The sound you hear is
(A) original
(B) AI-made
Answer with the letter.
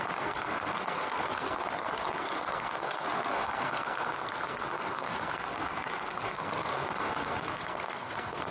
B